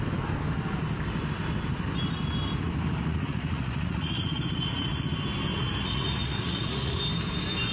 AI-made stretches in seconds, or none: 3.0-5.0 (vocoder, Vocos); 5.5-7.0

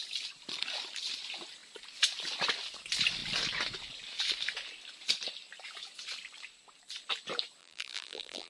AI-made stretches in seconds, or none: 7.6-8.5 (vocoder, BigVGAN v2)

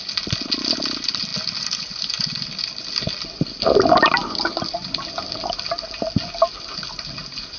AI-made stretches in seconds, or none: none

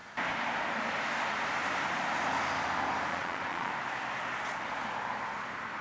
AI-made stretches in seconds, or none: 3.1-3.7 (vocoder, Vocos)

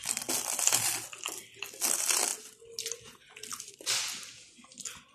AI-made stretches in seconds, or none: none

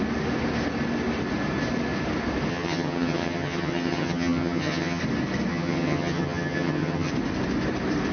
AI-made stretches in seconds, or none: 2.5-5.0 (vocoder, HiFi-GAN); 5.5-7.1

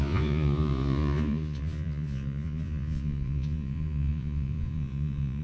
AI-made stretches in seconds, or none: 0.0-5.4 (vocoder, Vocos)